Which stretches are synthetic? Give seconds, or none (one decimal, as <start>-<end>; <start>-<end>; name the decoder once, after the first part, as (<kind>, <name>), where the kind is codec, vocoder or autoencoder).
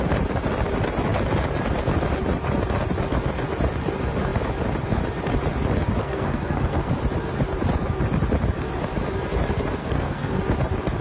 6.0-6.9 (codec, SNAC); 9.8-10.4